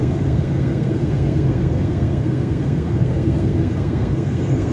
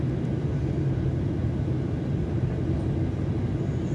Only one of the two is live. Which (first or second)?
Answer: second